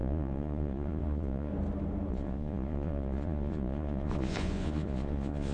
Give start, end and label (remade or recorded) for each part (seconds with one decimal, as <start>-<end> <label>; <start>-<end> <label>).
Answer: 0.0-1.5 remade; 1.5-2.1 recorded; 2.1-5.5 remade